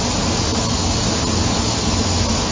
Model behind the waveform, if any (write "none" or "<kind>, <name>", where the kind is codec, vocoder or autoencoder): none